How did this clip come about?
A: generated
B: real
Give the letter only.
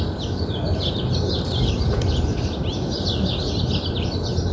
B